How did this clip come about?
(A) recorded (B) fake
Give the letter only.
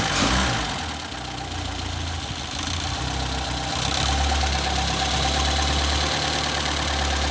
A